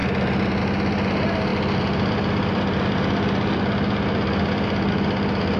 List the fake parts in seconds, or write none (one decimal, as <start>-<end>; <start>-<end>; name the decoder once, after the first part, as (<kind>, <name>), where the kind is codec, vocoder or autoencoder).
none